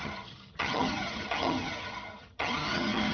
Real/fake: fake